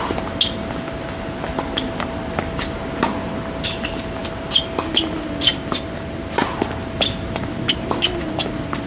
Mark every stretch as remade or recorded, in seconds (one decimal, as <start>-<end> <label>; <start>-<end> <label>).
0.0-8.9 recorded